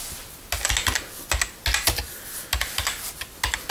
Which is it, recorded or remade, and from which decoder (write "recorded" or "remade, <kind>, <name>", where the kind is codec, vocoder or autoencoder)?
recorded